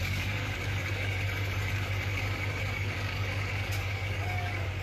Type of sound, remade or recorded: remade